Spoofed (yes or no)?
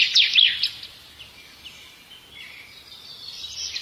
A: no